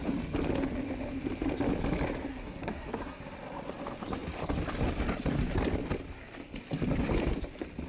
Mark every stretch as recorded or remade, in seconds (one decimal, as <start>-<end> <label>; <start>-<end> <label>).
0.0-2.3 recorded; 2.3-3.2 remade; 3.2-7.9 recorded